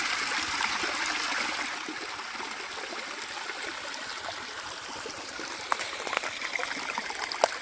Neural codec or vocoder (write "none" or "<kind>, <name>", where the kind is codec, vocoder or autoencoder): none